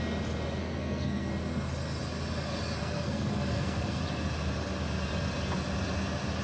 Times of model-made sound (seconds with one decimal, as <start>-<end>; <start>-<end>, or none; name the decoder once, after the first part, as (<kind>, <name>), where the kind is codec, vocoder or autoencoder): 0.6-1.3 (codec, SNAC); 2.8-4.0